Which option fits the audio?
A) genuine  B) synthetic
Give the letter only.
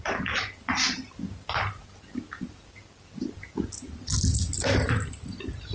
A